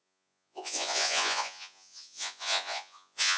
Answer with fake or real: fake